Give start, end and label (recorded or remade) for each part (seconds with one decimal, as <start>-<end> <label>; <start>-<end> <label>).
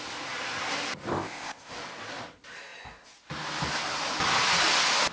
0.0-1.1 recorded; 1.1-1.7 remade; 1.7-5.1 recorded